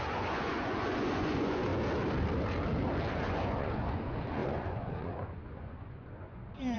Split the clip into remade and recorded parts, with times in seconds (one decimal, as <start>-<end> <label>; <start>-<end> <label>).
0.0-1.7 remade; 1.7-3.1 recorded; 3.1-6.8 remade